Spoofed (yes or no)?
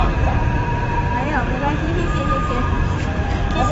yes